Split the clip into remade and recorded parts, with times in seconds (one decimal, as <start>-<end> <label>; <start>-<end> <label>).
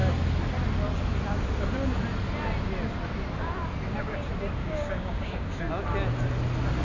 0.0-4.6 recorded; 4.6-5.6 remade; 5.6-6.8 recorded